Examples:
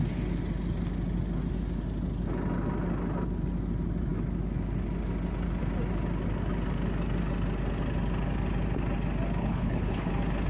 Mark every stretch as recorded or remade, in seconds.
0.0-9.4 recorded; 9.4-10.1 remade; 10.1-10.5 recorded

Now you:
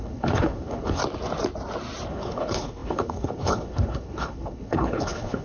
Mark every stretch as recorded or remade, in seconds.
0.0-1.0 remade; 1.0-2.1 recorded; 2.1-5.4 remade

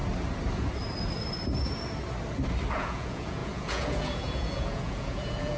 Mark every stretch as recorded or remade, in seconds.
0.0-2.7 recorded; 2.7-5.6 remade

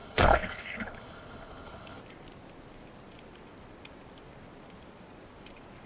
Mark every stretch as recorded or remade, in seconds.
0.0-2.0 remade; 2.0-5.9 recorded

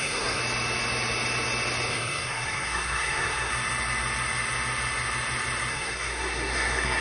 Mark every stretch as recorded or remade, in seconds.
0.0-0.4 remade; 0.4-1.9 recorded; 1.9-3.5 remade; 3.5-5.7 recorded; 5.7-7.0 remade

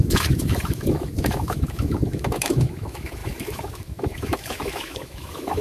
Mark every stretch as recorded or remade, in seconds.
0.0-5.6 remade

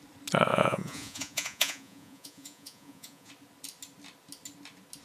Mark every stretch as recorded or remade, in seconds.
0.0-0.5 recorded; 0.5-3.3 remade; 3.3-5.0 recorded

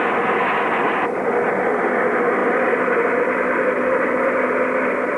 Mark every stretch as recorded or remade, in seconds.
0.0-5.2 recorded